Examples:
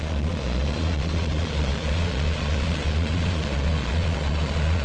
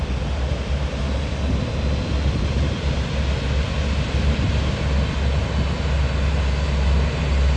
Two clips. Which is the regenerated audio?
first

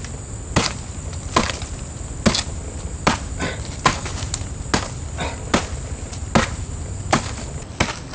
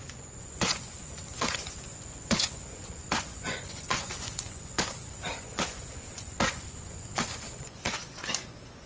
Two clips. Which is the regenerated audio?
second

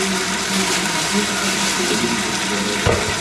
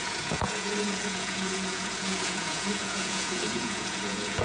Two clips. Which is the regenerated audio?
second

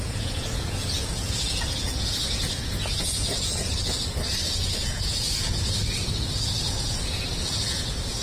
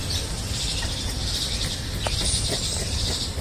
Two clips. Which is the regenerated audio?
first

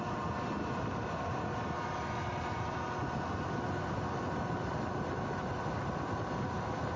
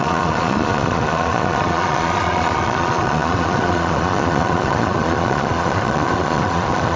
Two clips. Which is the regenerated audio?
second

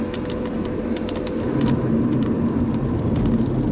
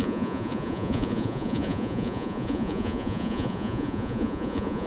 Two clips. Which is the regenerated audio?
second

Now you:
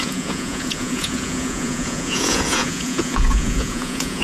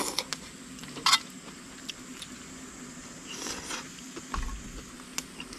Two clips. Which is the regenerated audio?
first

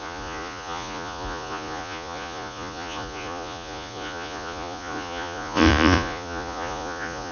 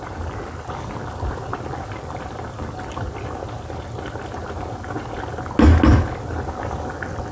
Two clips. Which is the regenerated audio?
first